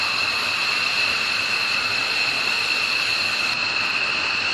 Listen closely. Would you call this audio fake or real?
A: real